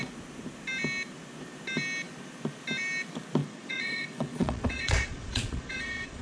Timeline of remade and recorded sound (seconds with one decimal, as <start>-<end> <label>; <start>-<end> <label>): 0.0-3.4 recorded; 3.4-6.2 remade